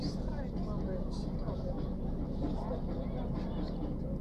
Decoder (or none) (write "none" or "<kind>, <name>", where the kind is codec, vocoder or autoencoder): none